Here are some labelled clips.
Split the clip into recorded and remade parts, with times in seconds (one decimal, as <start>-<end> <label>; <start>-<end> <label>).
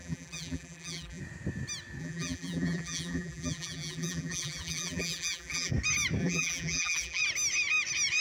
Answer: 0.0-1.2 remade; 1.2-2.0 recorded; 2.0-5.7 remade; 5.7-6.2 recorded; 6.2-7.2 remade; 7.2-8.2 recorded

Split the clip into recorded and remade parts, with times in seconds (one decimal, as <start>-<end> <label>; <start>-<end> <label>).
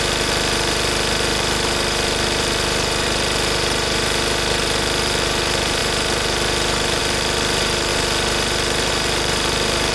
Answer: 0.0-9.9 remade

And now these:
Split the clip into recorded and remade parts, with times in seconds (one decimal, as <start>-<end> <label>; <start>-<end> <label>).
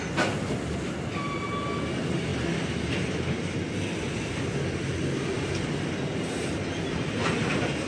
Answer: 0.0-7.9 recorded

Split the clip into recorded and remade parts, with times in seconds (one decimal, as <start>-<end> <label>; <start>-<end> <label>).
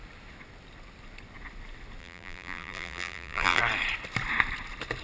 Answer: 0.0-2.0 recorded; 2.0-3.6 remade; 3.6-5.0 recorded